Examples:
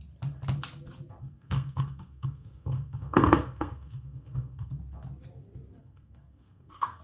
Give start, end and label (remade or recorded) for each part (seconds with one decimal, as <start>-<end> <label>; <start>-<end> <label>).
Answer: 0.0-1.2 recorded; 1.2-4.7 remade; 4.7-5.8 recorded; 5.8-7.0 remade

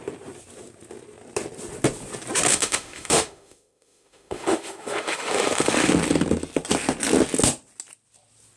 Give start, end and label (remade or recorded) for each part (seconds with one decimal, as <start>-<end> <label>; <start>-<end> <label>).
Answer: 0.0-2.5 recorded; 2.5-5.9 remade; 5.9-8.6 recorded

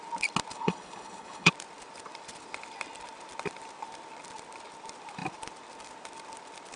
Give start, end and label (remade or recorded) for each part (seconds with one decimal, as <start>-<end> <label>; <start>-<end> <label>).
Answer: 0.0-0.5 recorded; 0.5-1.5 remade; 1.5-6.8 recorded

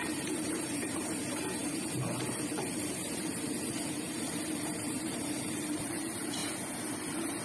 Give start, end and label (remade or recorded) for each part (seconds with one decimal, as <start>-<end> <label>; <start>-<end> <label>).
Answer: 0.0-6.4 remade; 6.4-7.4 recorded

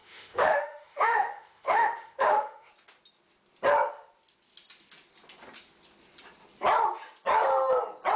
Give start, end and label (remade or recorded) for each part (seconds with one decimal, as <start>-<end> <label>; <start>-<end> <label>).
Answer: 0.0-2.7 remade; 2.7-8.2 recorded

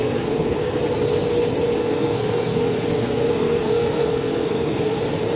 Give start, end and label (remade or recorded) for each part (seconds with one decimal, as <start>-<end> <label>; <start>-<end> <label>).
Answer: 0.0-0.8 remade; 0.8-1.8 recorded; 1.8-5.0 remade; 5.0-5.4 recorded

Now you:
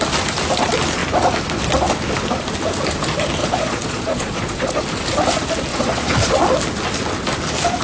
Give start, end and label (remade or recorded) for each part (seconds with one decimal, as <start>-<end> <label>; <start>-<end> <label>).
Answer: 0.0-3.4 recorded; 3.4-4.8 remade; 4.8-5.7 recorded; 5.7-6.4 remade; 6.4-7.8 recorded